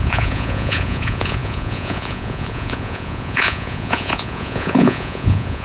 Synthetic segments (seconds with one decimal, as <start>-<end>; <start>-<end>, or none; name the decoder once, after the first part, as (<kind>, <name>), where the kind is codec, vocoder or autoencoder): 0.0-5.6 (vocoder, Vocos)